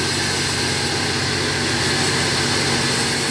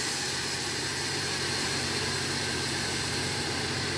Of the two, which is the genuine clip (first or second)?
first